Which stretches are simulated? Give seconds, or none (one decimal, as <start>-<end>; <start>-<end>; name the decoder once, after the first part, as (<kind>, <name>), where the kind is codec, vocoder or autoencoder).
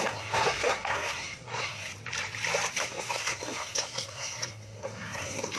0.0-1.9 (codec, SNAC); 2.7-5.6